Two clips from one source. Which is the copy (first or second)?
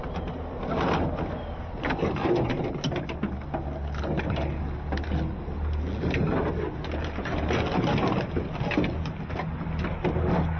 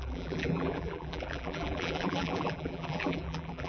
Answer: second